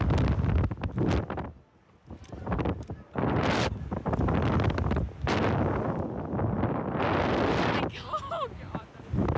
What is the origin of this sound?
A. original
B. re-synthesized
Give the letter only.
A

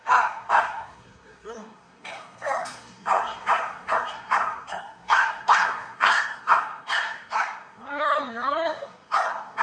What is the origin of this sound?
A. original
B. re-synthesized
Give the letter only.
B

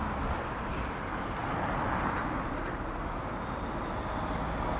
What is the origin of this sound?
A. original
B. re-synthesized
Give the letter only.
A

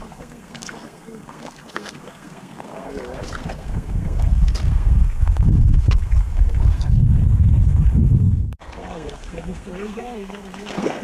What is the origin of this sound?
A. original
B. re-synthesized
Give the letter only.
B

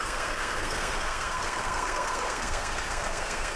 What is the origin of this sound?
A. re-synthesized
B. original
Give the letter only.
A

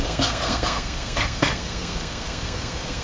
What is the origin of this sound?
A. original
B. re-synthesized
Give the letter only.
B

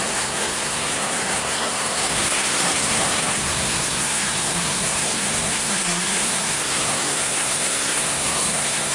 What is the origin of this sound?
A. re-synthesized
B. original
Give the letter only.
A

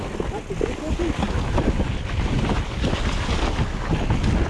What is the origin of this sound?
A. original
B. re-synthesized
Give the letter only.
A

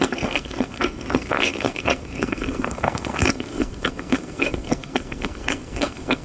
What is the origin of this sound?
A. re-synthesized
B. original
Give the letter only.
A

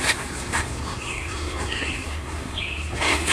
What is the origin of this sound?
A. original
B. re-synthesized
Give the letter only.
B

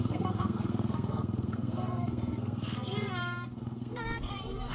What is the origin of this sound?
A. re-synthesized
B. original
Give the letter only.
A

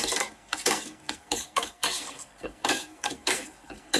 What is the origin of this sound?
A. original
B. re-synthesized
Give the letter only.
B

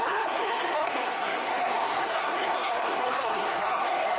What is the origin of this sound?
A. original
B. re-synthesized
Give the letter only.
B